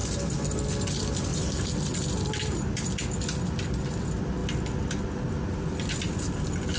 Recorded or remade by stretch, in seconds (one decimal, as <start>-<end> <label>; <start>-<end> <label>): 0.0-6.8 recorded